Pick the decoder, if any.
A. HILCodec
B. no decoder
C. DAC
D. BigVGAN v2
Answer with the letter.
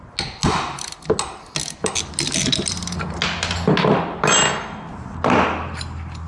B